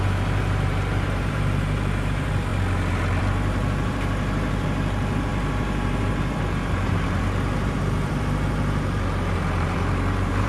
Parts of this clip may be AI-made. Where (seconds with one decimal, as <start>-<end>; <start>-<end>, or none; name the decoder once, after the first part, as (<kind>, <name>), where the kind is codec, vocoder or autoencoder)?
0.0-2.5 (vocoder, BigVGAN v2); 3.2-10.5